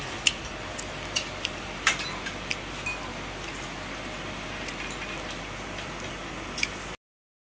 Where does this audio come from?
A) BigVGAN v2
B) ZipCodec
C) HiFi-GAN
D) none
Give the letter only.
D